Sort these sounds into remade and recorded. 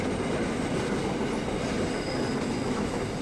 recorded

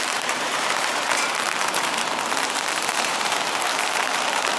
remade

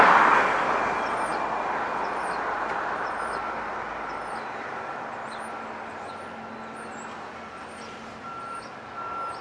recorded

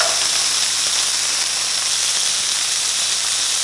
recorded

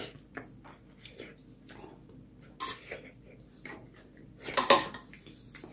recorded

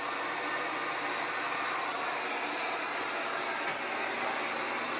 recorded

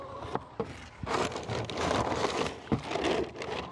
recorded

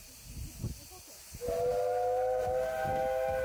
recorded